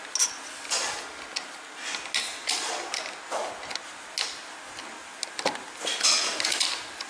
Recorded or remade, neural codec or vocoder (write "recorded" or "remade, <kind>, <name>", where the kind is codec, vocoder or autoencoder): recorded